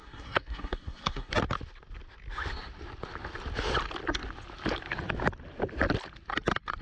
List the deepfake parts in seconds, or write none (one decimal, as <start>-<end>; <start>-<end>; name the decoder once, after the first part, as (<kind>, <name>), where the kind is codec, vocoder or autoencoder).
0.0-1.3 (codec, SNAC)